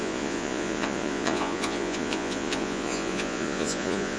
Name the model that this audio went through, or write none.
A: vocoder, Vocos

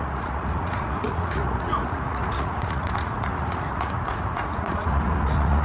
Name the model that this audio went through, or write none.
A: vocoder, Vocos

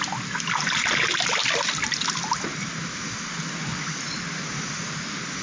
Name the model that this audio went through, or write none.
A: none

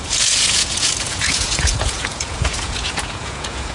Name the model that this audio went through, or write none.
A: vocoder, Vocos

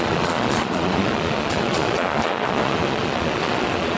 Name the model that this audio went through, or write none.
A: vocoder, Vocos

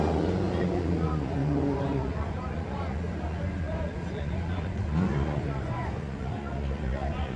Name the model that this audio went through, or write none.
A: vocoder, Vocos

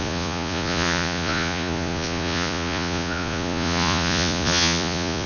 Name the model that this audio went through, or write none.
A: vocoder, Vocos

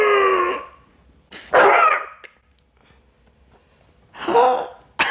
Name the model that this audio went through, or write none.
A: none